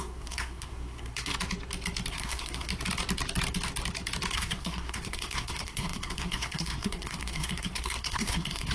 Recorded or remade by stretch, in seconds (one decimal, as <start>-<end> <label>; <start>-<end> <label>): 0.0-1.3 remade; 1.3-2.1 recorded; 2.1-2.7 remade; 2.7-4.3 recorded; 4.3-8.7 remade

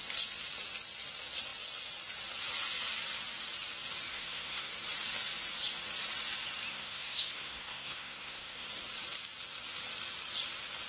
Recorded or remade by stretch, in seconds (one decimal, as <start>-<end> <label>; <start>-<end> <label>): 0.0-4.1 recorded; 4.1-4.7 remade; 4.7-6.7 recorded; 6.7-8.7 remade; 8.7-10.9 recorded

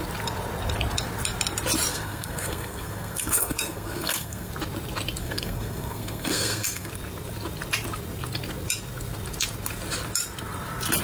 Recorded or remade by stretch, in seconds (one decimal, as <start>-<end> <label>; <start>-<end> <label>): 0.0-1.9 recorded; 1.9-4.5 remade; 4.5-5.2 recorded; 5.2-6.9 remade; 6.9-11.0 recorded